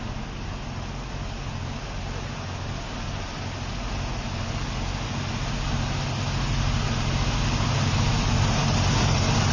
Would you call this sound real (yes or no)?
yes